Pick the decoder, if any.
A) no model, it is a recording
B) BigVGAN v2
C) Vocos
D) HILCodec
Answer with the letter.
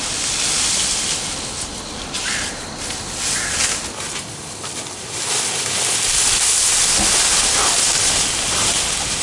A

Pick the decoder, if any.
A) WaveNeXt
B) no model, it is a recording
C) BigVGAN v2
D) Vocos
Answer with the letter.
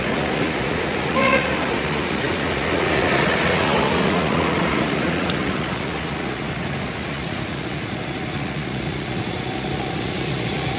D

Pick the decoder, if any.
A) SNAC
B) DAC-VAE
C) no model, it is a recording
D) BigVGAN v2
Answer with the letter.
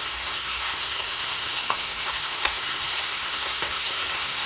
A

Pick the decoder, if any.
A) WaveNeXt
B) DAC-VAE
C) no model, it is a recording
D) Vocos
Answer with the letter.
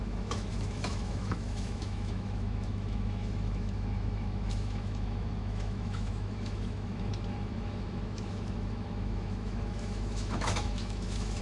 B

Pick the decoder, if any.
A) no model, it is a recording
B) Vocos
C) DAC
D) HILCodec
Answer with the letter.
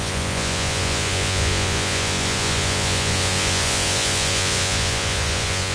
B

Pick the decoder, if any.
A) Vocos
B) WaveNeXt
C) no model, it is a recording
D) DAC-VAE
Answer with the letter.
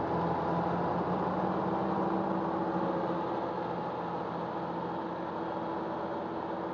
C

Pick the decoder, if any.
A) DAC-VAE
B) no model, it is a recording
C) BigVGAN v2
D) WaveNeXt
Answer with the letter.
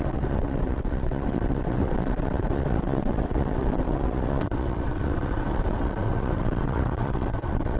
D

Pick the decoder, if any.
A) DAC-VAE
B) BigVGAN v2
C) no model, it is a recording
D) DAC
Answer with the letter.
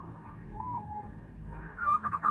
D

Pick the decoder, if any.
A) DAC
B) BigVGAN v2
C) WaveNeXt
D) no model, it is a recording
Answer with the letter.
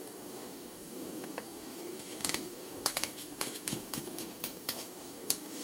A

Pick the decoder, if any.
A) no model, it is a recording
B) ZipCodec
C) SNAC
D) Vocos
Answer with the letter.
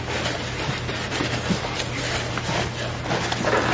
A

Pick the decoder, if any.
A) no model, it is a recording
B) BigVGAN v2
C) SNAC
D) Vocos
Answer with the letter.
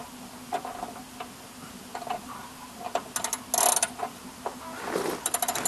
A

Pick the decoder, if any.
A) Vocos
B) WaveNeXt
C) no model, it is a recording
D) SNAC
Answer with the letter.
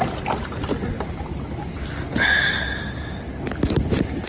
C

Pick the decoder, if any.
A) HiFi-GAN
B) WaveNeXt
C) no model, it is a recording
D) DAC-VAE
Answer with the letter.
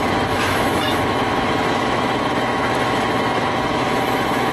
D